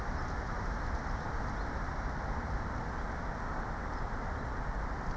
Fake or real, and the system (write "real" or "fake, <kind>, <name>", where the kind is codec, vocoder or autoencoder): real